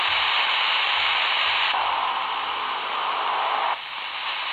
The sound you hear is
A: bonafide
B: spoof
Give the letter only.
A